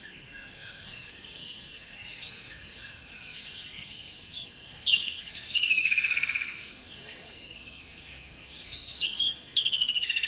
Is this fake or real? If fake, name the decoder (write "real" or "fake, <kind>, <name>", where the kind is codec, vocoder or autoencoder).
fake, codec, SNAC